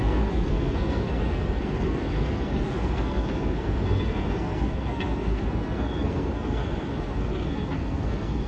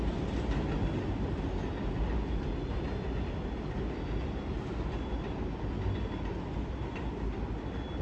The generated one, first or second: first